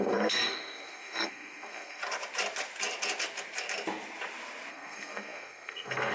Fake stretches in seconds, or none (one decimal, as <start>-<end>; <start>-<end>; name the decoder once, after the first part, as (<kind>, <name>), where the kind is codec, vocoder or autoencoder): 0.0-2.0 (codec, SNAC); 4.7-6.1